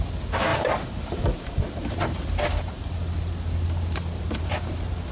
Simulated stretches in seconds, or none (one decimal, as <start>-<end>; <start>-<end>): 0.5-2.0